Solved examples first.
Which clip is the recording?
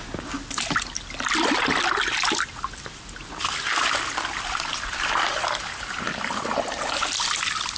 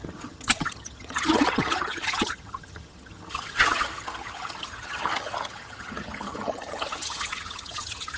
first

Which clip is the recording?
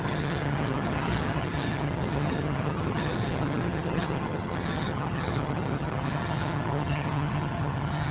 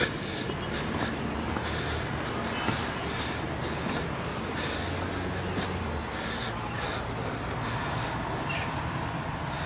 second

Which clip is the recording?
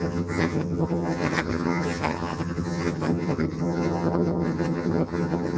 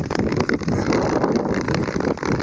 second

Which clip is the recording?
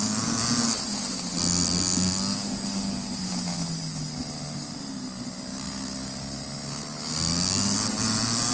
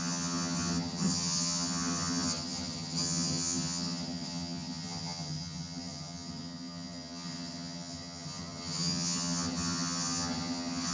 first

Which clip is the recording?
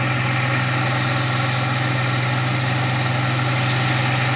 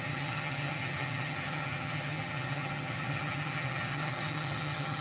first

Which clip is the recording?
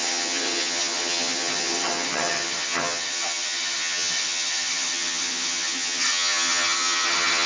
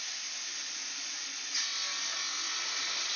second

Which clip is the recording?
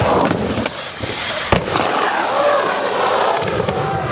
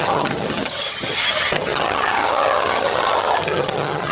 first